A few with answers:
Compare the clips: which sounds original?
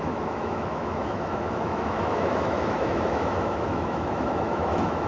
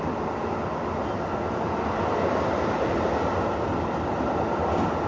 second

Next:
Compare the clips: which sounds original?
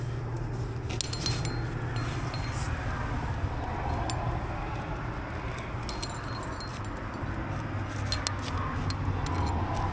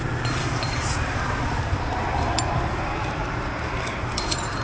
first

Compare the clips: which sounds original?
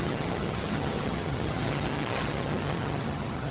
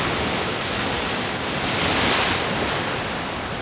second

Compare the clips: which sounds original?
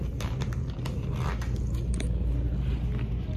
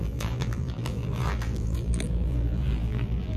first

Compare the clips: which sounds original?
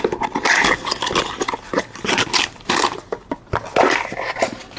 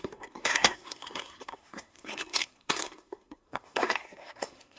first